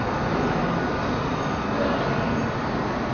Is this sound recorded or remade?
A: recorded